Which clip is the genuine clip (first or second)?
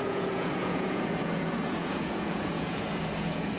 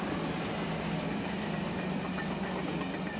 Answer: second